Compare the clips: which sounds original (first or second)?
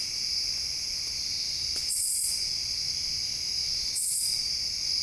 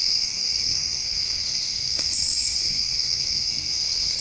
first